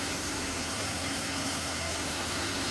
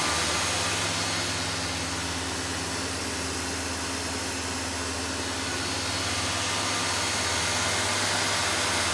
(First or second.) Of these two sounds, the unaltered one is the second